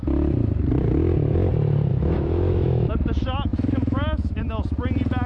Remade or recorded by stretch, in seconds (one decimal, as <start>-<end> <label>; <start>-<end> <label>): 0.0-1.9 recorded; 1.9-2.9 remade; 2.9-3.5 recorded; 3.5-4.4 remade; 4.4-5.3 recorded